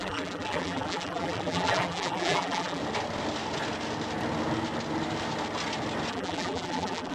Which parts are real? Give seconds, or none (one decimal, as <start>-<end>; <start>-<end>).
2.8-6.1